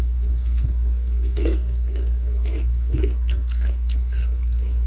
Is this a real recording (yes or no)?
no